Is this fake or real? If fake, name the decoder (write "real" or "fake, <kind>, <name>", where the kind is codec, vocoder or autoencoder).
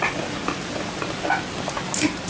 real